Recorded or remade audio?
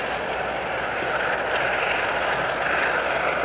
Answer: recorded